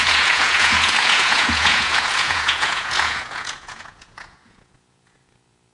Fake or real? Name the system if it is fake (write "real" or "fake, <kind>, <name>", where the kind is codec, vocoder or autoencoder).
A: fake, vocoder, Vocos